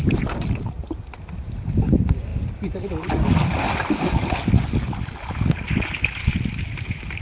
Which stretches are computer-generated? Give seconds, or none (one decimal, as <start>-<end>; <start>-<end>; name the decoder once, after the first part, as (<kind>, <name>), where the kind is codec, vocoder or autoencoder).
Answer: none